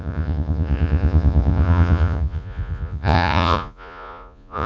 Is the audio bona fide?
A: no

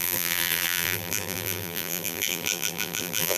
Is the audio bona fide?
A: no